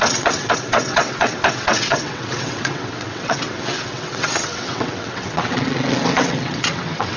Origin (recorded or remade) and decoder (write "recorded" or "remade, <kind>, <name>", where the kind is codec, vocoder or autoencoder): remade, vocoder, WaveNeXt